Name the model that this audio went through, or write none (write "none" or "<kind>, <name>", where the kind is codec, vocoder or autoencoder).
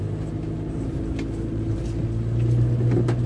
none